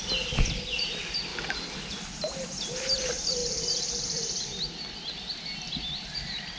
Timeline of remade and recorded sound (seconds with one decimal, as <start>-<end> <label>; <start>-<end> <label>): 0.0-1.3 remade; 1.3-1.9 recorded; 1.9-4.5 remade; 4.5-5.7 recorded; 5.7-6.6 remade